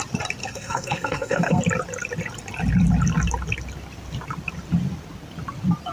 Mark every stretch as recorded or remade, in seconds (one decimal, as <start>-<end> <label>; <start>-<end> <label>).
0.0-0.4 recorded; 0.4-1.6 remade; 1.6-5.9 recorded